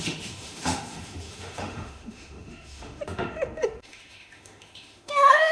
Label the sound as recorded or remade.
remade